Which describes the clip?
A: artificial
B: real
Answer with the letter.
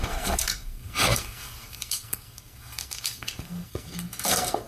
A